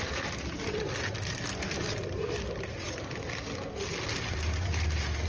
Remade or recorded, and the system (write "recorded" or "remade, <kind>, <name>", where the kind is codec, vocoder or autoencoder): recorded